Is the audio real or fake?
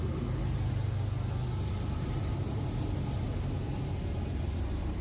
real